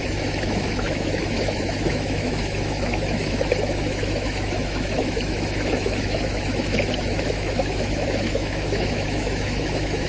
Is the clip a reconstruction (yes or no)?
yes